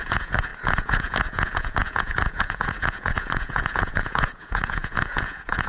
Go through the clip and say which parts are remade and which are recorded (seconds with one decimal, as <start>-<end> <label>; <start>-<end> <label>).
0.0-5.7 remade